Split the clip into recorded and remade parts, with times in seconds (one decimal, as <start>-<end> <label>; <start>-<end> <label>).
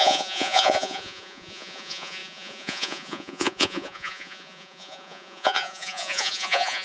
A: 0.0-6.8 remade